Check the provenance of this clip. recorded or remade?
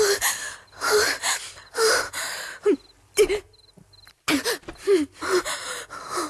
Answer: recorded